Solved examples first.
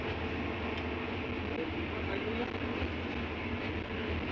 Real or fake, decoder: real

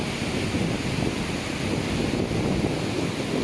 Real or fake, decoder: real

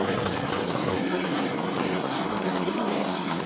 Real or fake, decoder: fake, codec, SNAC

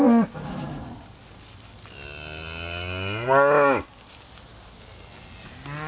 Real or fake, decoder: real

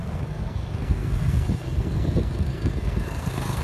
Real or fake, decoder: fake, codec, SNAC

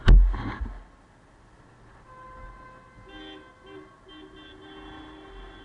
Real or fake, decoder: real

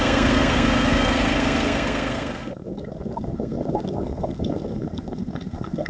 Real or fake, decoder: fake, codec, SNAC